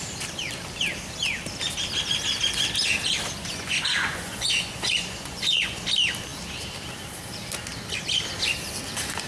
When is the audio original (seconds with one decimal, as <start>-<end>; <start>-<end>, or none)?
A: 0.0-3.4; 5.8-9.3